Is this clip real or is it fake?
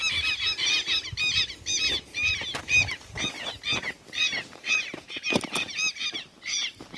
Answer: real